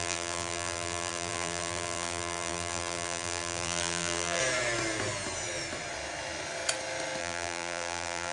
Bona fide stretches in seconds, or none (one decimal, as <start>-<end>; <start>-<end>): 4.4-7.2